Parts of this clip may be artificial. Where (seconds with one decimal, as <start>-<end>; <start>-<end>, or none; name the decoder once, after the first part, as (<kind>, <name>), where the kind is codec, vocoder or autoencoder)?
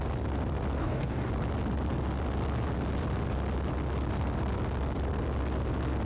0.8-1.3 (codec, DAC)